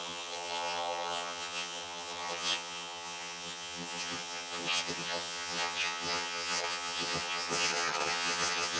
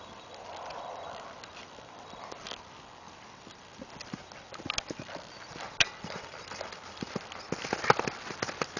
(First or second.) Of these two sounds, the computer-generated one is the first